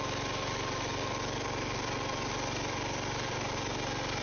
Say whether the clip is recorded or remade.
recorded